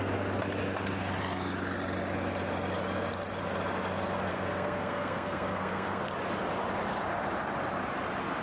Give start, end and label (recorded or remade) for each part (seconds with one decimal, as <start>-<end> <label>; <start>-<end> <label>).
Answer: 0.0-4.3 recorded; 4.3-6.0 remade; 6.0-8.4 recorded